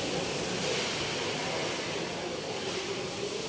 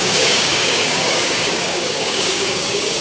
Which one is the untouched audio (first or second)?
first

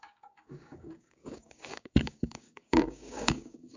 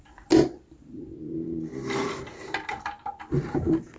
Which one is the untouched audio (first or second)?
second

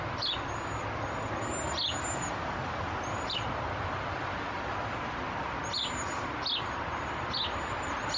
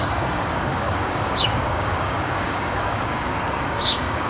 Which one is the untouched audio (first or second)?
first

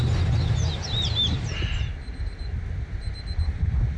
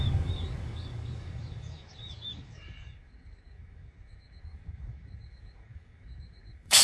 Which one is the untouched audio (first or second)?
first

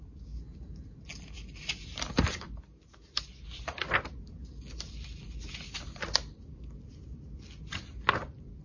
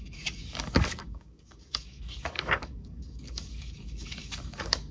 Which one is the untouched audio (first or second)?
first